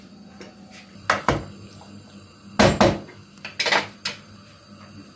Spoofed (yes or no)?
no